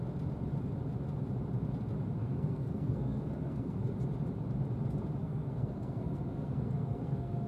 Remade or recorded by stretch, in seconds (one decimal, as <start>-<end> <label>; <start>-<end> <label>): 0.0-2.2 recorded; 2.2-3.9 remade; 3.9-5.2 recorded; 5.2-7.5 remade